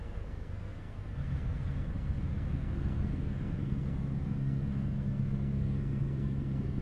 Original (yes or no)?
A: no